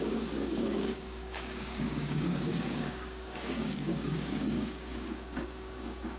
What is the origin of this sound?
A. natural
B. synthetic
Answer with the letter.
B